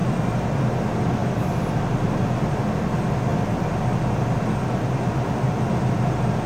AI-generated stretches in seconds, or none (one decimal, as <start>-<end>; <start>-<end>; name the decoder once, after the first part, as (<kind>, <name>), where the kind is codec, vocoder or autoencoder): 0.0-0.6 (vocoder, BigVGAN v2); 1.2-1.8